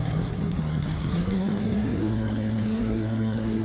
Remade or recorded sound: remade